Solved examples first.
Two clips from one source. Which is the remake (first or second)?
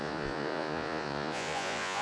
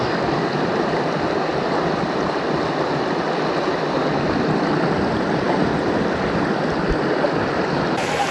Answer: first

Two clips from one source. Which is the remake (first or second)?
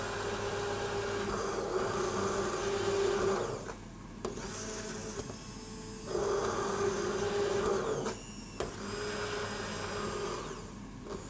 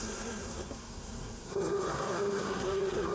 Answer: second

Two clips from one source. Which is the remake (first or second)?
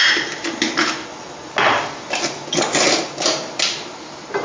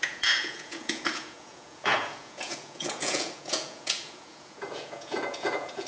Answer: second